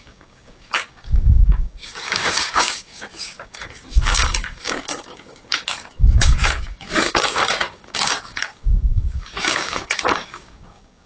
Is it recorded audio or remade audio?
remade